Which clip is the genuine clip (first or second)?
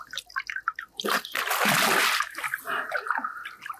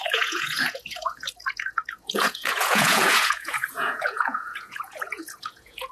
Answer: first